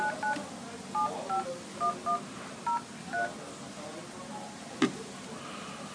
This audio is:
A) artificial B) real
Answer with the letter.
B